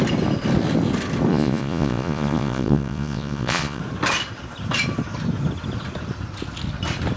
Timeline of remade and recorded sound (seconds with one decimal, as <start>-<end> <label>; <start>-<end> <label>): 0.0-1.3 recorded; 1.3-3.8 remade; 3.8-7.2 recorded